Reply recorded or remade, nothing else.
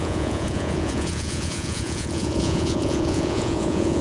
remade